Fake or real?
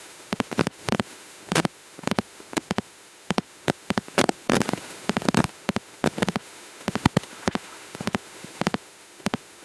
fake